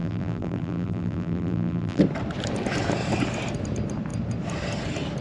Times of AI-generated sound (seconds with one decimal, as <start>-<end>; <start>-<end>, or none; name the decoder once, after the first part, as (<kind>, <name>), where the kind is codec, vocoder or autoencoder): 0.0-2.0 (vocoder, BigVGAN v2)